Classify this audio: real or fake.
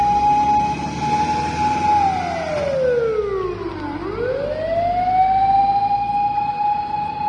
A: real